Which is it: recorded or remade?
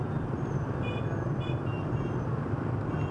recorded